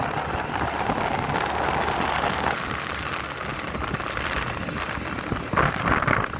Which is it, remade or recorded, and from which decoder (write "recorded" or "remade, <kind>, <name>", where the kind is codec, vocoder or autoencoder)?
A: recorded